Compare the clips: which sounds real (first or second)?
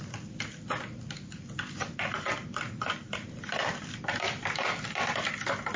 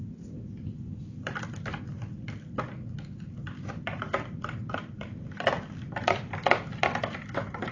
first